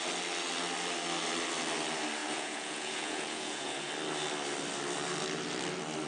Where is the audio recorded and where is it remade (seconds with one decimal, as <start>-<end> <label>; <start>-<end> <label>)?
0.0-2.2 recorded; 2.2-3.9 remade; 3.9-6.1 recorded